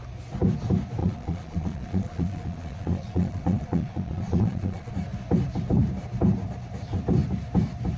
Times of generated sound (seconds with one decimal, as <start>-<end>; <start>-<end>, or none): 1.0-4.9